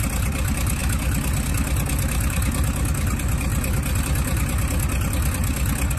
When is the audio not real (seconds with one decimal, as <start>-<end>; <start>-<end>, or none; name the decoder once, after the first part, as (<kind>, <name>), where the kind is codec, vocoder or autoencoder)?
none